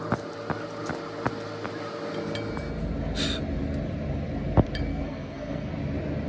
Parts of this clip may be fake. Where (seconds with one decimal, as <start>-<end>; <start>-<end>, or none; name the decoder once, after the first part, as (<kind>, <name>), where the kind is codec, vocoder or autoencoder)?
4.9-5.7 (codec, SNAC)